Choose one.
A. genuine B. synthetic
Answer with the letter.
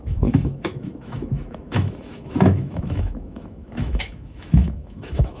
B